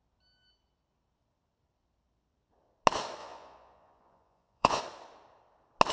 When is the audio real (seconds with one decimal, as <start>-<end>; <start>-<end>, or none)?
0.0-3.2; 4.8-5.9